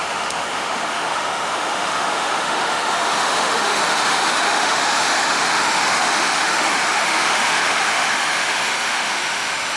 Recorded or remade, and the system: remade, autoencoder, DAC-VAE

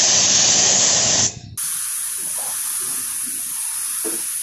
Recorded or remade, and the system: recorded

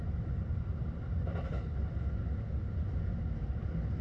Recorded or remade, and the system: recorded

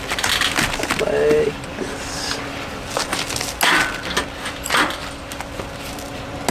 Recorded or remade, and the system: recorded